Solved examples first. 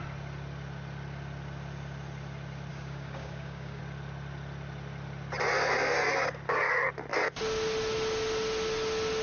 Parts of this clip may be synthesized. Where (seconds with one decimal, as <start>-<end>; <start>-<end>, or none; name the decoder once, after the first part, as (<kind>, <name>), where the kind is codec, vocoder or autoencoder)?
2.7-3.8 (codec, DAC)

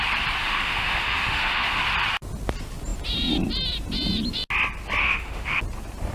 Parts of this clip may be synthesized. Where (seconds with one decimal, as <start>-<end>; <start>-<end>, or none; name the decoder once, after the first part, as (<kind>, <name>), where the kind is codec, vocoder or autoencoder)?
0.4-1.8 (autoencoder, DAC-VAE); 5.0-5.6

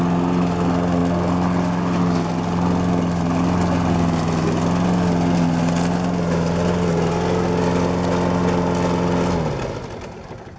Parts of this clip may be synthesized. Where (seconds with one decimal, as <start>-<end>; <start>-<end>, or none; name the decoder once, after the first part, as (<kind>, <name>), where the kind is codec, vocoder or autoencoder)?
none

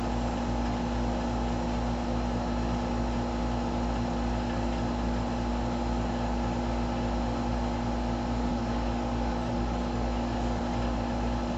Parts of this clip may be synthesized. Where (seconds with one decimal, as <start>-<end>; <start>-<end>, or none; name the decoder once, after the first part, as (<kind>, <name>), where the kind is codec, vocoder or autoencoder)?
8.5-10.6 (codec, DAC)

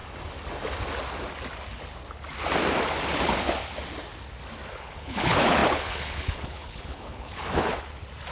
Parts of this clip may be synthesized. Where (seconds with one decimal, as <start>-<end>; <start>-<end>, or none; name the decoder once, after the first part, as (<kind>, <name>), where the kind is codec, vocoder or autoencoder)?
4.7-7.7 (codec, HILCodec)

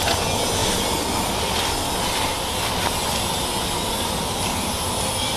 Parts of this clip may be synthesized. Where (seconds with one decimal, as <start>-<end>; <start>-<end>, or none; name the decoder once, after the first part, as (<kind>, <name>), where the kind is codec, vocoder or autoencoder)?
none